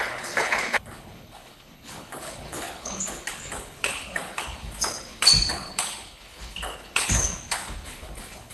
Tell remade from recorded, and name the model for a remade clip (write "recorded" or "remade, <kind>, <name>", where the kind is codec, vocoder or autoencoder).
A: remade, codec, HILCodec